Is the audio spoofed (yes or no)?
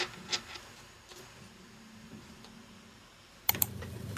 yes